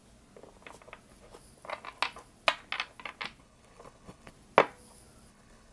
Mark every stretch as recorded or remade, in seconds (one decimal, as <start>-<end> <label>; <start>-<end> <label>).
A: 0.0-3.4 recorded; 3.4-4.3 remade; 4.3-5.3 recorded; 5.3-5.7 remade